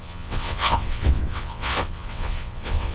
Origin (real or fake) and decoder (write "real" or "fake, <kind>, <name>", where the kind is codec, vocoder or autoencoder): fake, vocoder, WaveNeXt